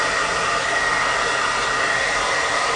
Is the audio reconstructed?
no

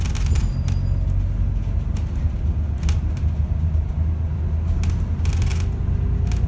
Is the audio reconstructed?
no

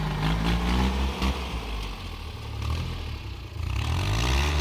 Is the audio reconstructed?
no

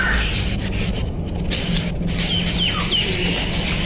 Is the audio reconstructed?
no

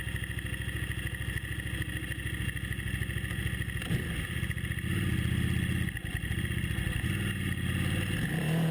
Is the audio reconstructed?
no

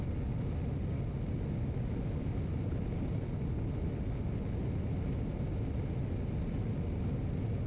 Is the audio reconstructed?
no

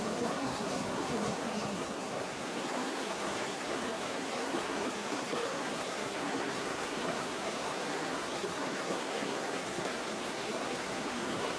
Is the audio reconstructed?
yes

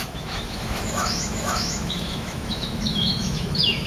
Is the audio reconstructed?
yes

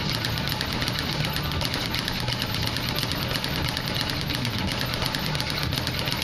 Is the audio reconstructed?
no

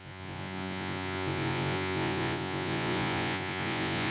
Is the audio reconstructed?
yes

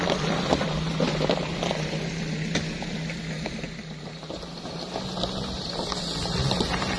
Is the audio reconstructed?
no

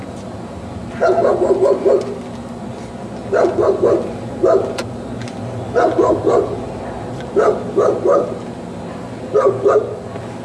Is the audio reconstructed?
no